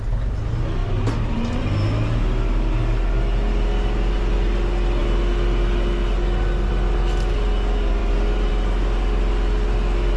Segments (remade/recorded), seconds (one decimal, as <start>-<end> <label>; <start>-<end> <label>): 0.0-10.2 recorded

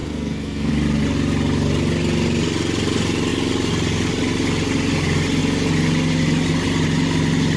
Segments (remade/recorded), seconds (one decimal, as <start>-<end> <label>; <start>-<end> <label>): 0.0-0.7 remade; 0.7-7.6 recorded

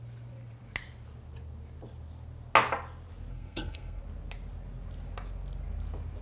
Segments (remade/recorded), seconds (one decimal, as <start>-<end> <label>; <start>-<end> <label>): 0.0-3.3 recorded; 3.3-4.0 remade; 4.0-6.2 recorded

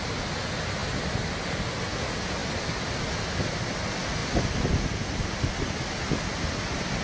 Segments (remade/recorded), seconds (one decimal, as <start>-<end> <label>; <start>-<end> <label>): 0.0-2.4 recorded; 2.4-3.2 remade; 3.2-4.2 recorded; 4.2-7.0 remade